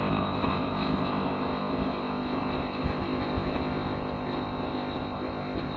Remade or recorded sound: remade